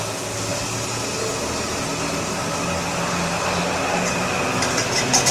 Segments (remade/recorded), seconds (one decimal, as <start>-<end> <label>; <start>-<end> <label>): 0.0-5.3 recorded